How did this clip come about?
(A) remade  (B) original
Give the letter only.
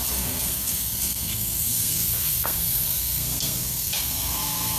A